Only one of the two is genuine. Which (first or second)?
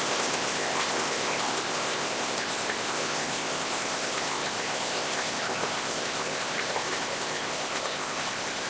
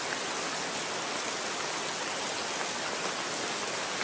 second